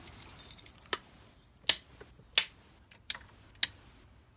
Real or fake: real